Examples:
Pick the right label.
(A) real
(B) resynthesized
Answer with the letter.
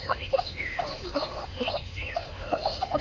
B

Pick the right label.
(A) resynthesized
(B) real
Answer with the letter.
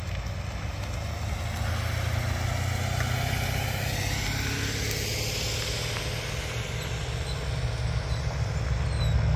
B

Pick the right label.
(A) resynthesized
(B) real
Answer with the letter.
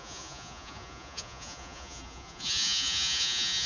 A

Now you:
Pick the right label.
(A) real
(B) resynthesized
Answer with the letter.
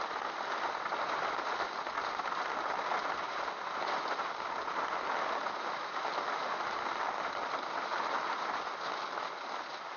A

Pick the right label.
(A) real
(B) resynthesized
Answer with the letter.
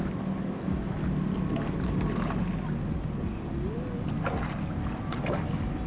A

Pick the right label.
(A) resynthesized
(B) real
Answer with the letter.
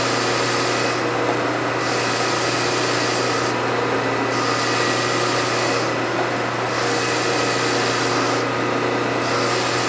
B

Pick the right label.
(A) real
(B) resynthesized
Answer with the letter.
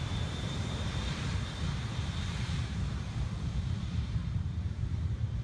B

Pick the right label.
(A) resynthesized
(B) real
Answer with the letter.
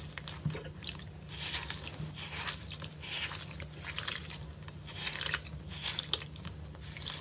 B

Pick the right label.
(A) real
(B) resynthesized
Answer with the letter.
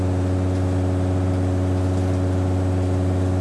A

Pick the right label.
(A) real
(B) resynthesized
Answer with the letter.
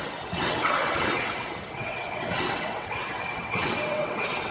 B